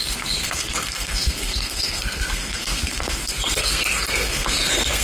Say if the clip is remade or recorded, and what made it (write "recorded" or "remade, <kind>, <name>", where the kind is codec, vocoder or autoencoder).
remade, codec, SNAC